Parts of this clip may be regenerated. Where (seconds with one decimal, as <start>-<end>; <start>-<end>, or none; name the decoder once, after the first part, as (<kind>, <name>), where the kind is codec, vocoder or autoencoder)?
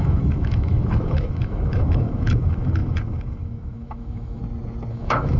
0.0-4.4 (autoencoder, DAC-VAE); 4.9-5.4